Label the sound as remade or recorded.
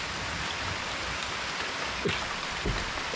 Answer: recorded